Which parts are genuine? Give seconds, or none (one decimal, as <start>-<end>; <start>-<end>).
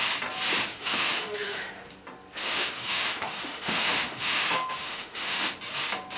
0.0-0.7; 1.7-2.4; 5.4-6.2